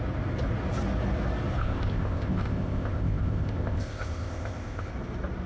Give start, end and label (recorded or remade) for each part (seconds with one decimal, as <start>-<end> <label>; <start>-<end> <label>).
0.0-1.6 recorded; 1.6-4.9 remade; 4.9-5.5 recorded